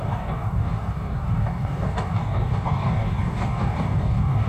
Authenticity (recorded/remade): remade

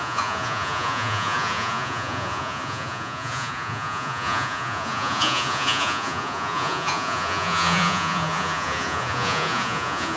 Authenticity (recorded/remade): remade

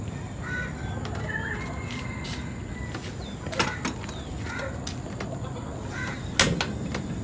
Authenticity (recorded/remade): recorded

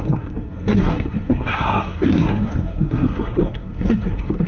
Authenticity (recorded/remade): remade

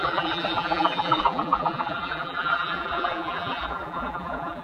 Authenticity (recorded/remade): remade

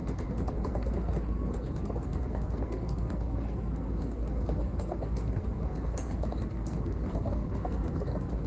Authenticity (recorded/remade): remade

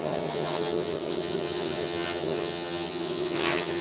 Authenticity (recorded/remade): remade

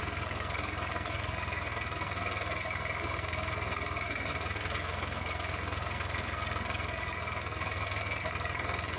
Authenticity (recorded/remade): remade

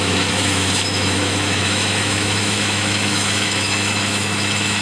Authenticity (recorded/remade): remade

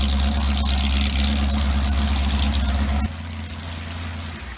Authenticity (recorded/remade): recorded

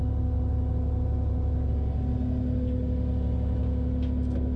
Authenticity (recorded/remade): recorded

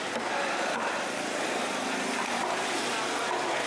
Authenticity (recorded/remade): recorded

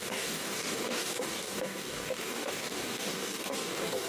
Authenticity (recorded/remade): remade